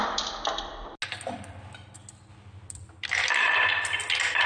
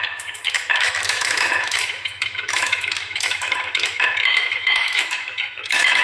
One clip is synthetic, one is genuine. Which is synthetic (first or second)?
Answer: second